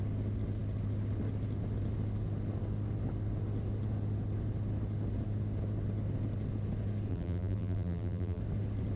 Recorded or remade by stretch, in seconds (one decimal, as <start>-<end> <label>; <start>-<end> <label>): 0.0-7.1 recorded; 7.1-8.4 remade; 8.4-9.0 recorded